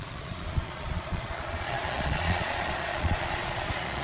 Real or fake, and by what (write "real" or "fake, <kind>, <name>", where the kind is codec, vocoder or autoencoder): fake, vocoder, Vocos